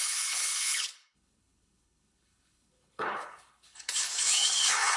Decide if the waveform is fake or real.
fake